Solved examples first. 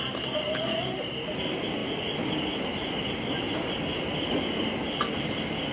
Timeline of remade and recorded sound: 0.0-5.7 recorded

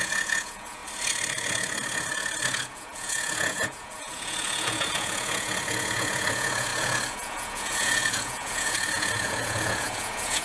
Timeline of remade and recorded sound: 0.0-0.8 remade; 0.8-2.5 recorded; 2.5-10.4 remade

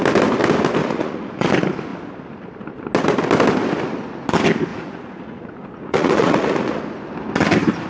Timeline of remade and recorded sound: 0.0-0.8 recorded; 0.8-1.5 remade; 1.5-4.7 recorded; 4.7-6.8 remade; 6.8-7.9 recorded

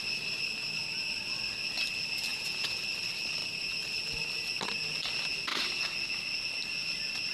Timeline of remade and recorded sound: 0.0-2.3 recorded; 2.3-2.8 remade; 2.8-7.3 recorded

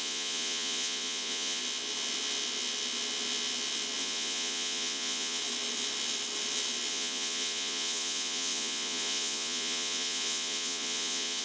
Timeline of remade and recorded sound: 0.0-1.6 remade; 1.6-4.0 recorded; 4.0-5.4 remade; 5.4-6.9 recorded; 6.9-11.4 remade